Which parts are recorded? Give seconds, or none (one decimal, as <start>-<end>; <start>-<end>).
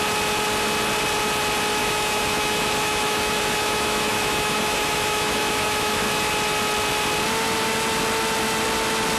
0.0-1.8; 6.3-9.2